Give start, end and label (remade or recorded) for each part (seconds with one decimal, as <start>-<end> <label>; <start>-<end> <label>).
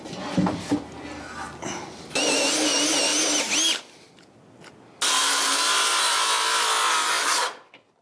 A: 0.0-8.0 recorded